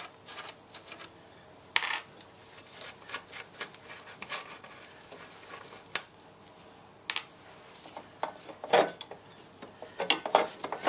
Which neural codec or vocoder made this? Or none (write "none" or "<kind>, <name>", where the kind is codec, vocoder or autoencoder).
none